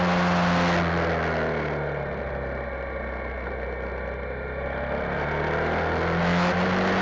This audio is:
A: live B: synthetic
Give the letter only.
A